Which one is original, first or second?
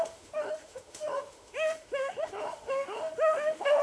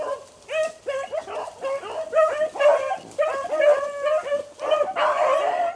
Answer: second